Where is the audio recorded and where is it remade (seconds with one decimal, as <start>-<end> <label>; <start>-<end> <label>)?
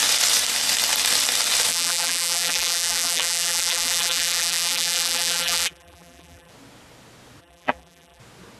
0.0-1.7 recorded; 1.7-6.5 remade; 6.5-7.4 recorded; 7.4-8.2 remade; 8.2-8.6 recorded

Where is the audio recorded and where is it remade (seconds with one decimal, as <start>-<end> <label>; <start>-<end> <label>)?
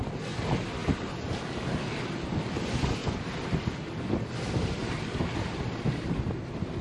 0.0-3.0 recorded; 3.0-3.7 remade; 3.7-4.8 recorded; 4.8-6.8 remade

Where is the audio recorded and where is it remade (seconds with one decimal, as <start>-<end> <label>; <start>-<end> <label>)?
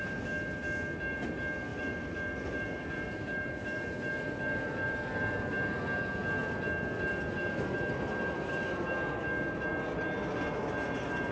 0.0-1.7 recorded; 1.7-5.8 remade; 5.8-11.3 recorded